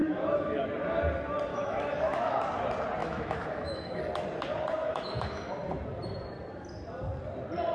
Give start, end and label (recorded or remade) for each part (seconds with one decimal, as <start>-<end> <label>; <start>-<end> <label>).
0.0-0.6 remade; 0.6-1.5 recorded; 1.5-2.4 remade; 2.4-3.0 recorded; 3.0-4.0 remade; 4.0-4.8 recorded; 4.8-5.5 remade; 5.5-7.7 recorded